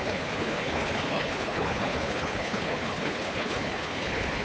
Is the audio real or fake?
fake